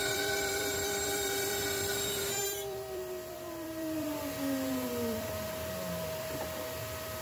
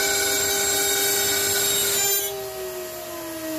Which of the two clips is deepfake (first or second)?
first